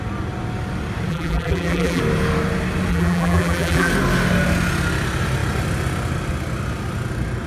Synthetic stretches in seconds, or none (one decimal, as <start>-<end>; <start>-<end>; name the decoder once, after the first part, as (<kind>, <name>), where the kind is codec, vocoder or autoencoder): 1.1-2.0 (vocoder, BigVGAN v2); 2.9-3.9

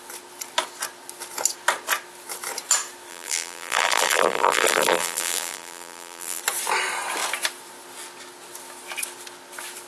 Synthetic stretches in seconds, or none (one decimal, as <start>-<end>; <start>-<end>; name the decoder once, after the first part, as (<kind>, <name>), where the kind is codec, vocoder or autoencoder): 3.1-6.4 (vocoder, BigVGAN v2)